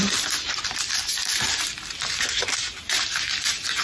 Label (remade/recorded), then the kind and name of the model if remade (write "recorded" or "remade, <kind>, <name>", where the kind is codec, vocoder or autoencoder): recorded